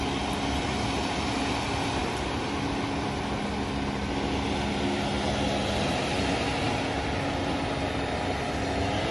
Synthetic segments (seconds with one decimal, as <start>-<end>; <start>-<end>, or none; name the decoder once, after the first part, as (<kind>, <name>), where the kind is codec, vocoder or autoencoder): none